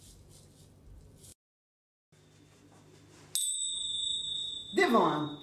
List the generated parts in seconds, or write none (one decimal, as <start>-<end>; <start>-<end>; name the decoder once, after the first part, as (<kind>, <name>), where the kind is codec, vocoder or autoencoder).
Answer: none